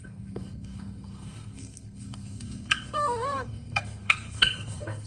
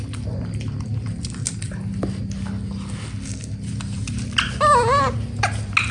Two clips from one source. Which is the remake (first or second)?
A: first